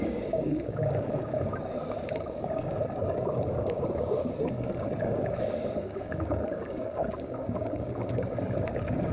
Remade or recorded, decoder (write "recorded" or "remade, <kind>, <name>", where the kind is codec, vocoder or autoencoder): remade, codec, DAC